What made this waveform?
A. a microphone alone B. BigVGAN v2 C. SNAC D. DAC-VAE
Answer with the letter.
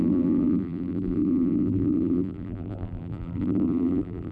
B